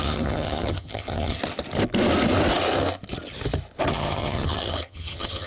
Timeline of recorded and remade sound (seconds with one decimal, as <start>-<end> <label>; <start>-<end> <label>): 0.0-1.4 remade; 1.4-3.9 recorded; 3.9-5.5 remade